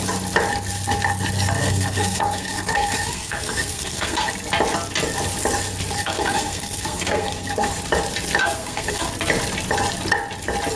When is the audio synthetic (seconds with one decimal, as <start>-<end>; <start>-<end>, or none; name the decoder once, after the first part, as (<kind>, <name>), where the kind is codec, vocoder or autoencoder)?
1.6-4.3 (codec, SNAC); 6.0-7.7; 8.4-9.1